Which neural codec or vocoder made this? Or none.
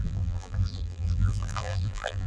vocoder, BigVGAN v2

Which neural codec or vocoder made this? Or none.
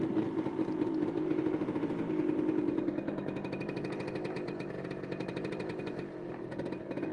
vocoder, BigVGAN v2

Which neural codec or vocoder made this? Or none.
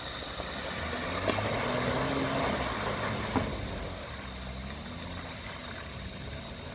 none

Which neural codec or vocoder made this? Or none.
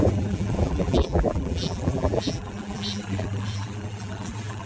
vocoder, BigVGAN v2